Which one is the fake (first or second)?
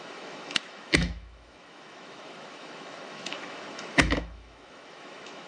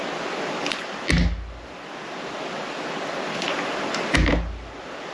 first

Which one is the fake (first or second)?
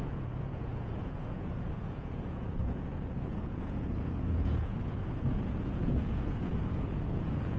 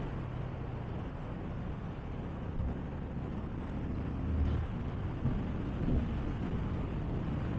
first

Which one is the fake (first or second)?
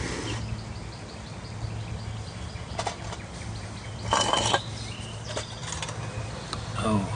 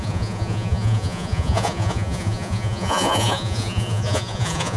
second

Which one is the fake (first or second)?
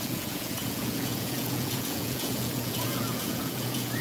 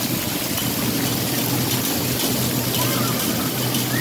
first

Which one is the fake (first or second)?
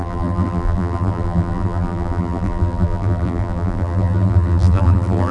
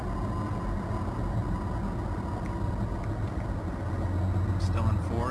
first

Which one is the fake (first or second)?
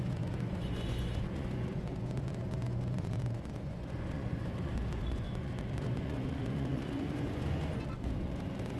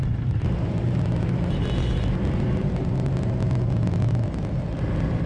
first